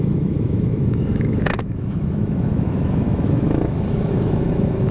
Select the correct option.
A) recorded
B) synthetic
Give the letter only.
B